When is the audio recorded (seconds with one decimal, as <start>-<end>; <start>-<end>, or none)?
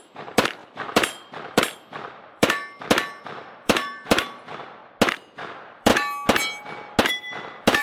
2.6-3.2; 4.8-5.5; 5.9-7.1